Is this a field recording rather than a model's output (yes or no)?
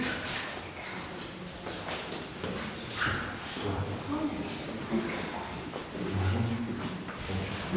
yes